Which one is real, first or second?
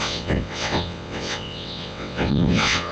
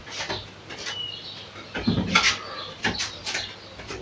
second